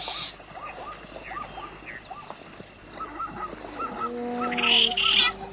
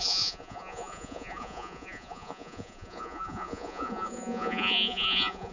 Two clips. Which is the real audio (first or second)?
first